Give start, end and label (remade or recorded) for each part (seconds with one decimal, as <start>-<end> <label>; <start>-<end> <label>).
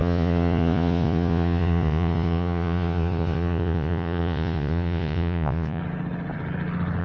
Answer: 0.0-5.8 remade; 5.8-7.0 recorded